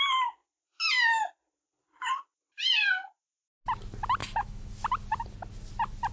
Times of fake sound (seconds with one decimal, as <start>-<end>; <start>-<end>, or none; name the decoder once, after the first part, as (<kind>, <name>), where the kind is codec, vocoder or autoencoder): 4.2-4.7 (autoencoder, DAC-VAE)